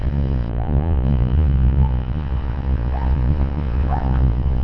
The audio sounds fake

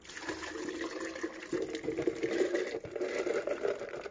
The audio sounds real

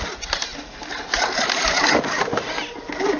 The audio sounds real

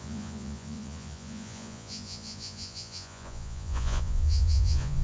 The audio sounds fake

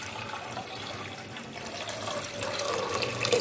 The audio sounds real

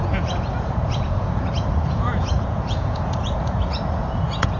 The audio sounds fake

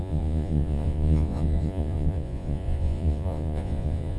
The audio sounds fake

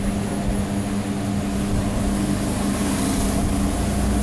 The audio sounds real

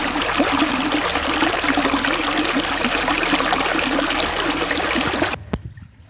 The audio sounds real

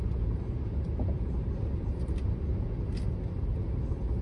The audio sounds real